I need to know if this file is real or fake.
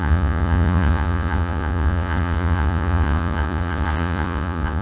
fake